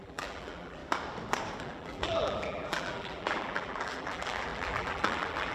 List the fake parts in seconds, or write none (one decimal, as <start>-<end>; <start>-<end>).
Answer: 0.0-0.8; 1.6-5.5